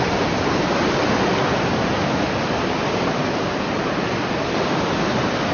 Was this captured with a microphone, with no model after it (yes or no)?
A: yes